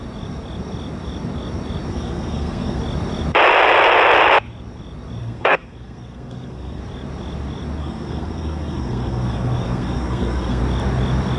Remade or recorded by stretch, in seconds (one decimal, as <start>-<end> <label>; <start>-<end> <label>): 0.0-1.9 recorded; 1.9-2.8 remade; 2.8-5.2 recorded; 5.2-6.8 remade; 6.8-7.8 recorded; 7.8-10.6 remade; 10.6-11.4 recorded